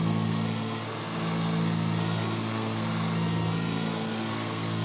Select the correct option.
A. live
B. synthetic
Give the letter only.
B